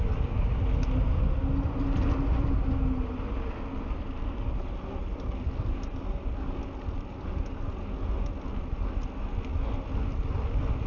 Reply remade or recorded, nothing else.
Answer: recorded